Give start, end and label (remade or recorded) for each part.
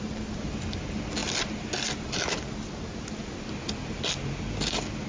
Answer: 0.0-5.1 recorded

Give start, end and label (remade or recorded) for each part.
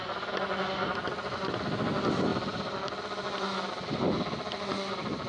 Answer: 0.0-5.3 recorded